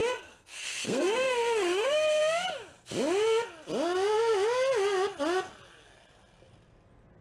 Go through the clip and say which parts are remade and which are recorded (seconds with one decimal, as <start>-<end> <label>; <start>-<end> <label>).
0.0-2.2 remade; 2.2-7.2 recorded